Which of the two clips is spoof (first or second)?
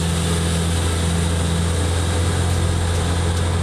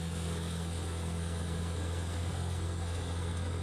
second